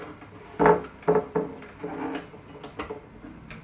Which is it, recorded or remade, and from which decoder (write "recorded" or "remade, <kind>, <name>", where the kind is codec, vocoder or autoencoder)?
recorded